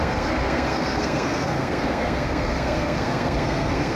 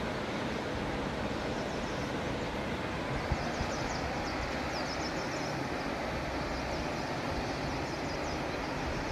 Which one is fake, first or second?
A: first